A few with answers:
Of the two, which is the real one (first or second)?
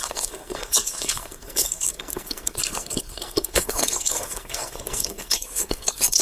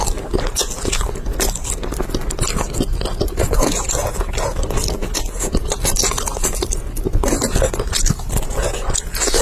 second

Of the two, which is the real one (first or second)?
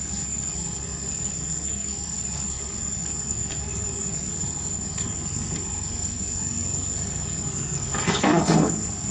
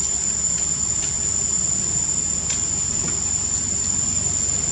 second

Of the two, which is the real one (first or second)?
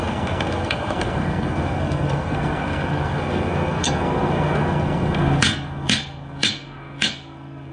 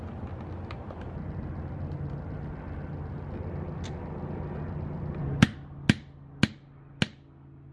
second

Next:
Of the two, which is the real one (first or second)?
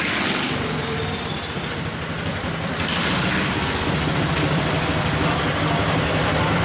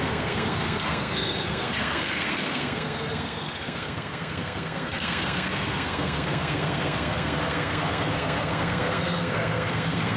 first